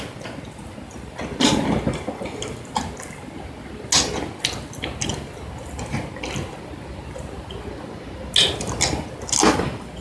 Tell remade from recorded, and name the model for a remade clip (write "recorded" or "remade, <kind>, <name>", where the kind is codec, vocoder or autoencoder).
recorded